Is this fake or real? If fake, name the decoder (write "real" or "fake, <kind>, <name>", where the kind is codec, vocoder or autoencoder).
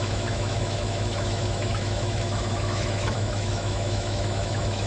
fake, autoencoder, DAC-VAE